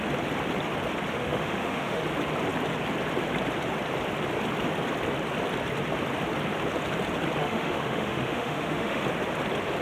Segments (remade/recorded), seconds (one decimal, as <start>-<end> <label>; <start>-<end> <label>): 0.0-1.2 recorded; 1.2-2.0 remade; 2.0-7.4 recorded; 7.4-9.0 remade; 9.0-9.8 recorded

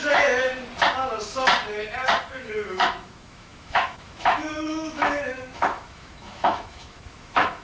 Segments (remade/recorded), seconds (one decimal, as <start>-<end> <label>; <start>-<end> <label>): 0.0-0.5 remade; 0.5-2.3 recorded; 2.3-7.6 remade

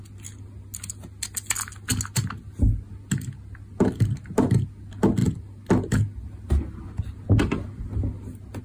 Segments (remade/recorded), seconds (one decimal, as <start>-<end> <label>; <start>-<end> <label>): 0.0-8.6 recorded